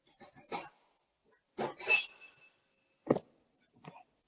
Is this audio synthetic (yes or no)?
no